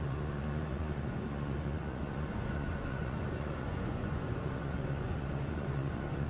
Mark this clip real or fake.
fake